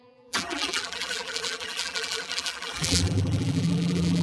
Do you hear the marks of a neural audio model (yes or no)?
yes